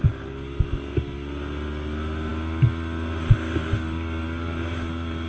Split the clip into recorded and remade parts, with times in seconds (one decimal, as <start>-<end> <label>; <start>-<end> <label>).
0.0-5.3 recorded